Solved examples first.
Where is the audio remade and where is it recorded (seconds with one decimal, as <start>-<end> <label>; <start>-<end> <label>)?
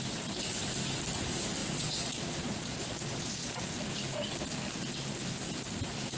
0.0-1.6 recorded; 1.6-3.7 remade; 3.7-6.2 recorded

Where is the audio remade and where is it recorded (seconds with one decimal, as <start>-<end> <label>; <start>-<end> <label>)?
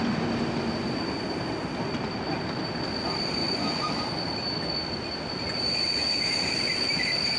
0.0-3.4 recorded; 3.4-3.9 remade; 3.9-7.4 recorded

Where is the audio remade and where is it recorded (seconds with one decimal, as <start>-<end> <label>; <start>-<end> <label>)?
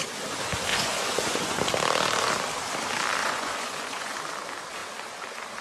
0.0-0.7 recorded; 0.7-1.6 remade; 1.6-3.2 recorded; 3.2-4.2 remade; 4.2-5.6 recorded